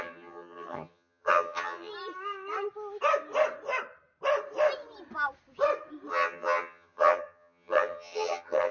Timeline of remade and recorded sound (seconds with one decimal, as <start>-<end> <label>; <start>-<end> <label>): 0.0-1.9 remade; 1.9-6.1 recorded; 6.1-8.7 remade

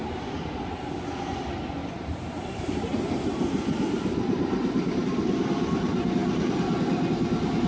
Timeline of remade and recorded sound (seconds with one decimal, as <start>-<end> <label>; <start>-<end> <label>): 0.0-1.8 recorded; 1.8-5.0 remade; 5.0-7.7 recorded

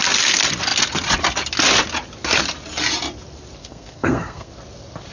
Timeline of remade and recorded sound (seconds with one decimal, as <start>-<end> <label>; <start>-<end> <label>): 0.0-3.6 recorded; 3.6-4.5 remade; 4.5-5.1 recorded

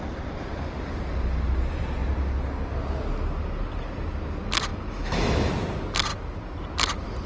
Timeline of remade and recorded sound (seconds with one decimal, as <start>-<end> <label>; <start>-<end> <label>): 0.0-4.7 recorded; 4.7-5.5 remade; 5.5-7.3 recorded

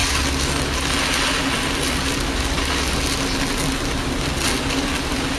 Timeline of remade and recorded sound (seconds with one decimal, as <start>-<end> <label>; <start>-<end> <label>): 0.0-5.4 recorded

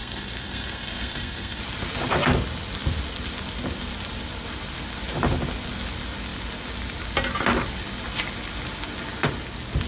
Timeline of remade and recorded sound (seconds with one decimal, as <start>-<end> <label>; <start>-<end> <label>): 0.0-1.6 remade; 1.6-9.9 recorded

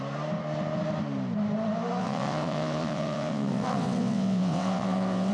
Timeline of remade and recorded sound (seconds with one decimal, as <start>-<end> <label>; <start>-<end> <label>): 0.0-2.0 recorded; 2.0-5.3 remade

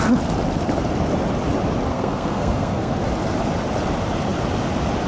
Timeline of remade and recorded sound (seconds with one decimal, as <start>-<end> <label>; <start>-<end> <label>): 0.0-1.9 recorded; 1.9-2.9 remade; 2.9-5.1 recorded